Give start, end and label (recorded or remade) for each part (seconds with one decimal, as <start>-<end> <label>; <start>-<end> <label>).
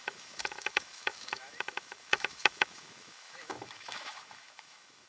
0.0-5.1 remade